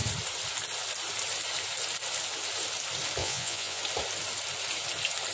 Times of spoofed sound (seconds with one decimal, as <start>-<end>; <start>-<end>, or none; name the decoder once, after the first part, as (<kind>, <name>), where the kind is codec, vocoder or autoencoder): 3.2-3.8 (vocoder, Vocos)